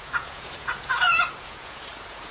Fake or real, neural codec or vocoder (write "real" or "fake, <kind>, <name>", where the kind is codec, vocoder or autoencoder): fake, vocoder, Vocos